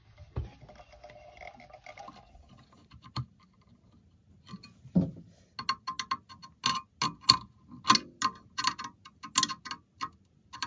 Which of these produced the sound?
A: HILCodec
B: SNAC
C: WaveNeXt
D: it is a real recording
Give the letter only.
D